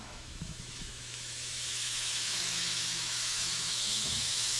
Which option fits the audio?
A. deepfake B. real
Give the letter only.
A